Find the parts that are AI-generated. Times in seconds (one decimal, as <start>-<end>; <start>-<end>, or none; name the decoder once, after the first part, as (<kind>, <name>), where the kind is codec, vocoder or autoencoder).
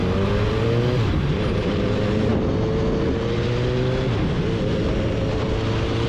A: 1.2-2.3 (vocoder, BigVGAN v2)